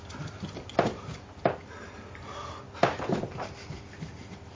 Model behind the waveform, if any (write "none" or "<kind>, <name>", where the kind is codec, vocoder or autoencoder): none